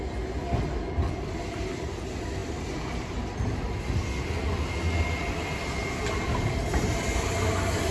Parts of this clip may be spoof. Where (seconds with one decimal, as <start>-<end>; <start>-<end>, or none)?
none